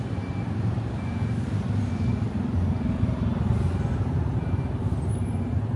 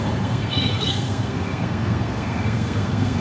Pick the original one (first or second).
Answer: first